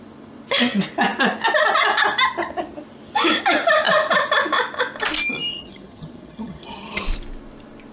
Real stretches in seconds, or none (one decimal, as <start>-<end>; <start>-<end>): 0.0-5.5; 7.0-7.9